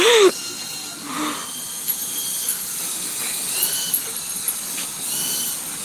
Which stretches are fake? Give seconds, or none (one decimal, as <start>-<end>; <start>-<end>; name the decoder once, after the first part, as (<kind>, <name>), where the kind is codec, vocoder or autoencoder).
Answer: 2.3-2.9 (vocoder, BigVGAN v2)